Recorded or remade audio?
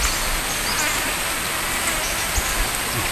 recorded